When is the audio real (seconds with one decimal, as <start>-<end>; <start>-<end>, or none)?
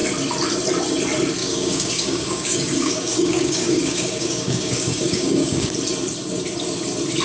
0.0-1.4; 5.7-7.2